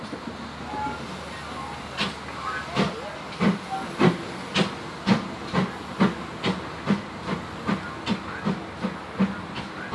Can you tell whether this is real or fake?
real